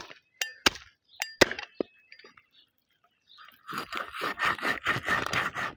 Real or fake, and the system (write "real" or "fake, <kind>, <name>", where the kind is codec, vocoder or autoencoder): real